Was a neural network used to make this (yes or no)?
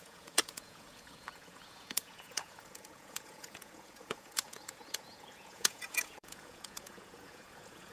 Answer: yes